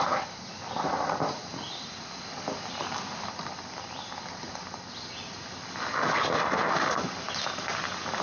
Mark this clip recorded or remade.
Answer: recorded